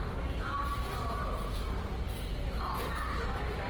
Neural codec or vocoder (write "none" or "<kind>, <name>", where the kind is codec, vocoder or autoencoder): none